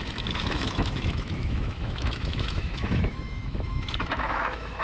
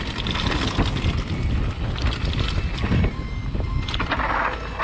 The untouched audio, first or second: second